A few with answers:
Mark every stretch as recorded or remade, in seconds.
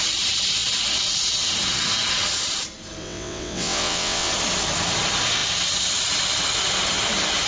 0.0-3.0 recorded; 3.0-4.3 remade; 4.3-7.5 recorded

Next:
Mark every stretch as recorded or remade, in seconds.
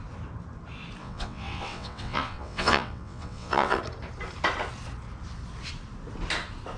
0.0-1.0 recorded; 1.0-3.8 remade; 3.8-6.8 recorded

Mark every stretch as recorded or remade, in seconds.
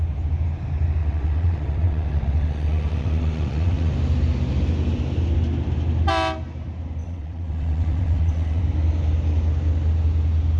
0.0-1.0 recorded; 1.0-3.9 remade; 3.9-7.0 recorded; 7.0-8.6 remade; 8.6-10.6 recorded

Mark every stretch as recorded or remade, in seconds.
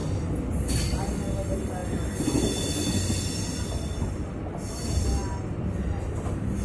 0.0-6.6 recorded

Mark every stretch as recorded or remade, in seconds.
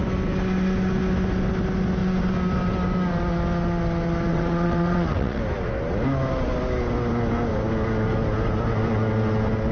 0.0-4.3 recorded; 4.3-5.4 remade; 5.4-9.7 recorded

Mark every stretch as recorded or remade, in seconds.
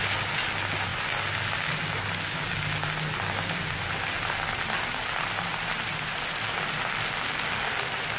0.0-8.2 recorded